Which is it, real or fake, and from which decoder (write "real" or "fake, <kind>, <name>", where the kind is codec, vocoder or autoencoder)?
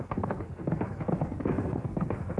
fake, codec, SNAC